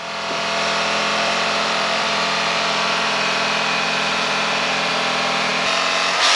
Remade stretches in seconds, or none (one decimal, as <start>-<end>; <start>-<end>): 1.1-4.9